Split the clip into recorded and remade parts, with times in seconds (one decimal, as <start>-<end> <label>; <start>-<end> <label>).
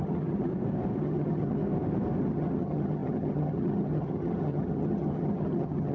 0.0-0.5 remade; 0.5-1.0 recorded; 1.0-1.6 remade; 1.6-2.2 recorded; 2.2-5.9 remade